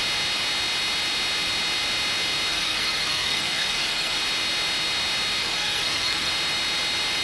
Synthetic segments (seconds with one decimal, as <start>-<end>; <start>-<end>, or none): 2.5-4.2; 5.4-6.3